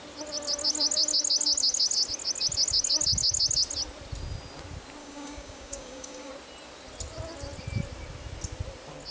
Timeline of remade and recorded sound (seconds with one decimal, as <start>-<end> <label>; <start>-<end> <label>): 0.0-5.0 recorded; 5.0-6.3 remade; 6.3-9.1 recorded